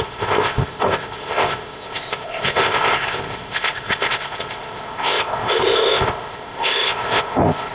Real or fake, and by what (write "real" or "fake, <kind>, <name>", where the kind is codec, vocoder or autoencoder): fake, codec, ZipCodec